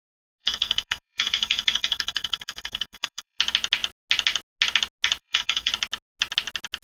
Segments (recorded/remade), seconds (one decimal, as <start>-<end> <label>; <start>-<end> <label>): 0.0-0.4 recorded; 0.4-3.4 remade; 3.4-5.2 recorded; 5.2-5.7 remade; 5.7-6.8 recorded